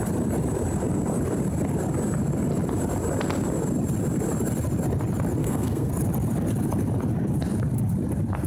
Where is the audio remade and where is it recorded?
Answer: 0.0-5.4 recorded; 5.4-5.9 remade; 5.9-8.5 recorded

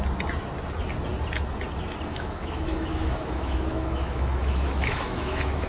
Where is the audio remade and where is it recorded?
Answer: 0.0-2.1 recorded; 2.1-5.7 remade

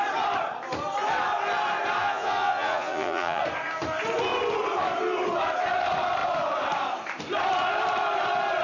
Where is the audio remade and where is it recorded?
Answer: 0.0-2.0 recorded; 2.0-3.4 remade; 3.4-8.6 recorded

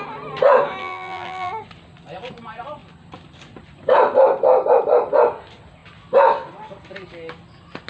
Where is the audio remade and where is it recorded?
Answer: 0.0-0.8 recorded; 0.8-1.5 remade; 1.5-7.9 recorded

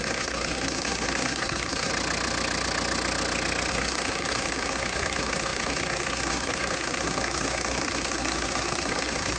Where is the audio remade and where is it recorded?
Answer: 0.0-1.9 remade; 1.9-3.7 recorded; 3.7-9.4 remade

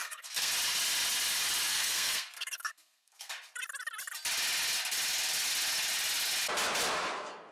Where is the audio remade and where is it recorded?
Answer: 0.0-0.5 remade; 0.5-1.7 recorded; 1.7-3.3 remade; 3.3-7.5 recorded